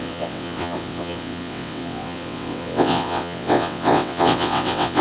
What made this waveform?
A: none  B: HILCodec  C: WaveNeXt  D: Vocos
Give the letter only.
C